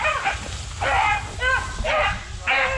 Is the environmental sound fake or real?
real